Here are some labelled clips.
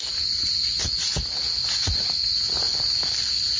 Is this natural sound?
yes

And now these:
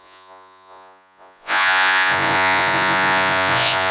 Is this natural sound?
no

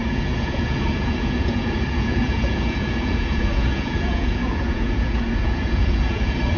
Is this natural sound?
no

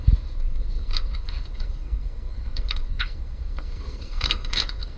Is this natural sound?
no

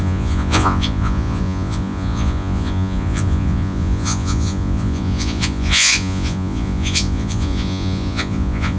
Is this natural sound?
no